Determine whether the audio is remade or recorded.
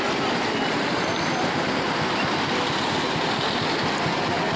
recorded